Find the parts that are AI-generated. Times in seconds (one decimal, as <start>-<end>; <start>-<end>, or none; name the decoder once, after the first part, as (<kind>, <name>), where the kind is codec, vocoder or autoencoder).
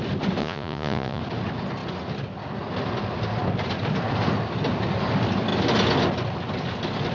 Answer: 0.4-1.2 (vocoder, Vocos)